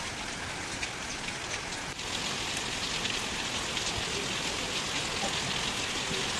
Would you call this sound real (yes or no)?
yes